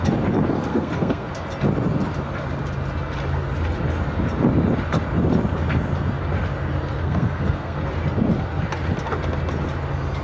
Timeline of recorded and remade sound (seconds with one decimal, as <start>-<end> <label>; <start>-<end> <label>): 0.0-0.7 recorded; 0.7-1.3 remade; 1.3-7.0 recorded; 7.0-7.8 remade; 7.8-10.2 recorded